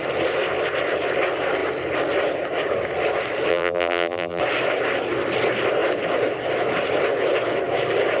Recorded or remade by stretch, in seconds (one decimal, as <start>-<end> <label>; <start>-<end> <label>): 0.0-3.5 recorded; 3.5-4.4 remade; 4.4-8.2 recorded